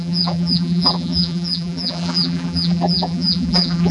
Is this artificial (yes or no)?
yes